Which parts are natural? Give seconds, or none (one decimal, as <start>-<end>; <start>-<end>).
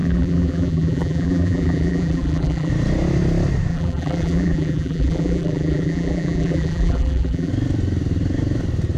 2.7-3.7; 7.5-9.0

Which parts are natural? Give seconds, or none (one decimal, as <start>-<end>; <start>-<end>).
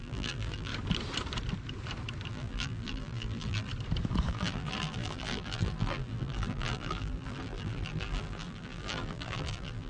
0.7-2.3; 3.7-4.3